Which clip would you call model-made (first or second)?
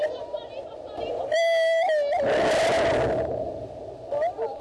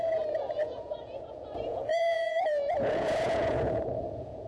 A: second